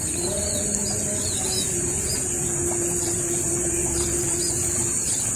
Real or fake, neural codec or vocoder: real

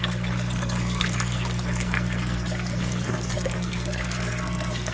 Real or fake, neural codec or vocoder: fake, codec, SNAC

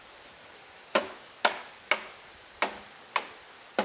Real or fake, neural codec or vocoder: real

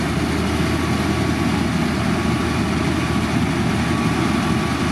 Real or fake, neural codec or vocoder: real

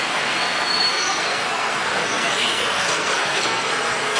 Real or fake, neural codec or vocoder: fake, codec, SNAC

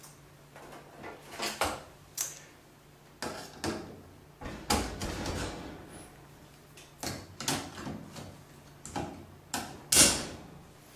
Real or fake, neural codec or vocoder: real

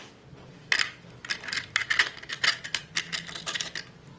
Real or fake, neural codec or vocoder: real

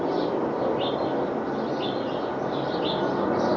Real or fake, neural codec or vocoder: real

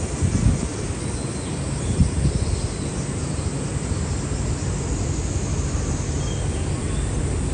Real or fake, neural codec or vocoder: real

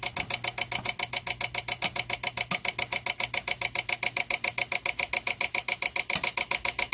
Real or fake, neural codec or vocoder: real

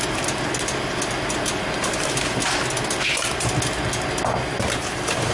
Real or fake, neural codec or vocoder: real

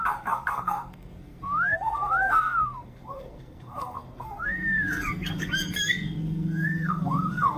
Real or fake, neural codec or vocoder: fake, codec, SNAC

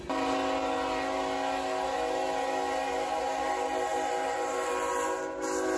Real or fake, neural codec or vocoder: real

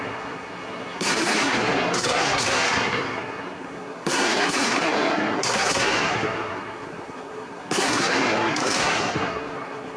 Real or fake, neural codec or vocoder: fake, codec, SNAC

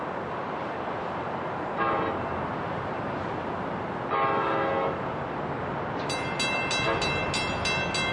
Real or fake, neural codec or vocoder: real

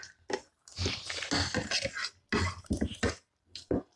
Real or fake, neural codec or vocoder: real